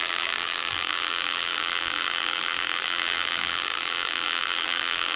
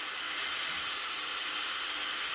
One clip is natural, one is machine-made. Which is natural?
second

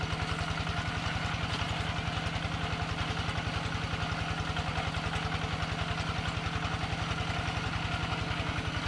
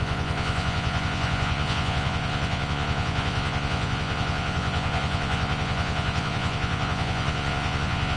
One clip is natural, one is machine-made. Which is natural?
first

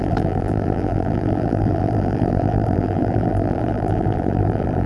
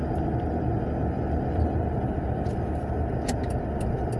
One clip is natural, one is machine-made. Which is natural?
second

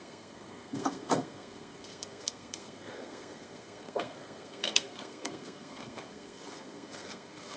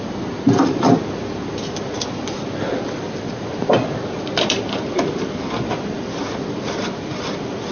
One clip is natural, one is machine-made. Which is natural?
second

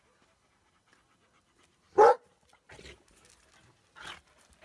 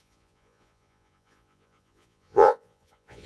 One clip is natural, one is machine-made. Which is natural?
first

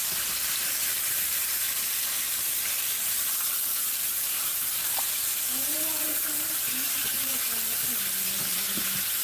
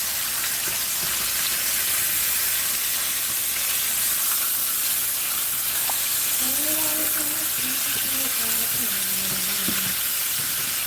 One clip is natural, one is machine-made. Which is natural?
second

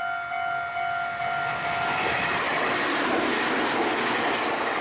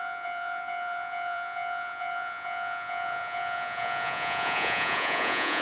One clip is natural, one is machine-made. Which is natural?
first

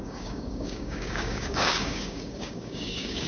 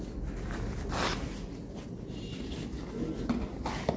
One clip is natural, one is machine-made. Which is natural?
second